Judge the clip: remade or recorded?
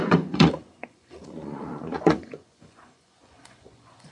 remade